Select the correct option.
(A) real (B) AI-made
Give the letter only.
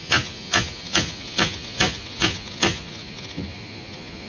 B